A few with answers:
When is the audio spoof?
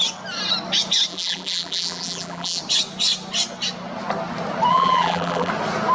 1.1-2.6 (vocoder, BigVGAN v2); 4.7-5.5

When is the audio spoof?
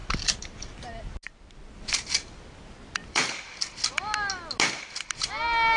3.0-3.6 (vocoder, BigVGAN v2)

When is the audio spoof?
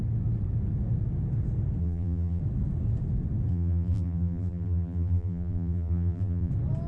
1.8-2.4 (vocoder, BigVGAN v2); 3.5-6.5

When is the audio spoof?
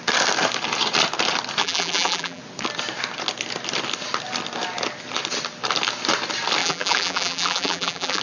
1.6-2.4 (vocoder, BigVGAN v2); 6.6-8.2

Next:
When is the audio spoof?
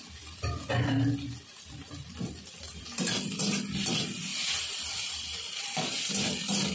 4.3-6.1 (vocoder, BigVGAN v2)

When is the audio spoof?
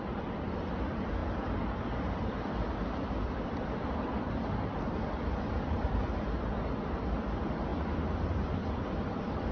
1.2-6.4 (vocoder, BigVGAN v2); 7.7-9.5